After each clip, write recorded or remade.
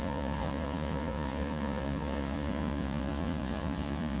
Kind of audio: remade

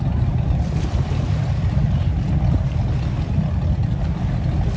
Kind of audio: recorded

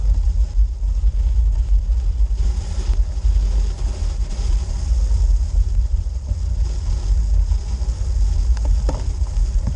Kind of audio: recorded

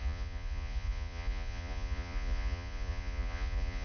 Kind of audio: remade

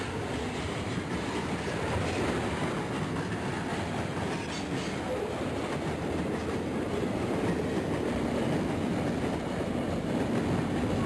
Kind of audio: recorded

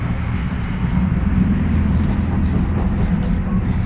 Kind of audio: recorded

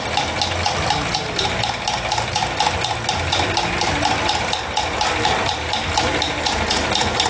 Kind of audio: recorded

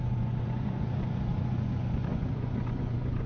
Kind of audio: remade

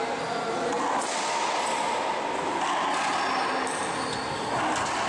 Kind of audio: recorded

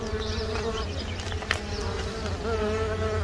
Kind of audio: recorded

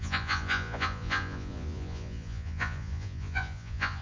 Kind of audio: remade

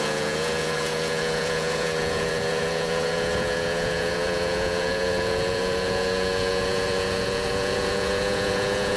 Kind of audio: remade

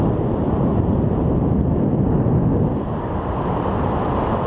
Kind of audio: recorded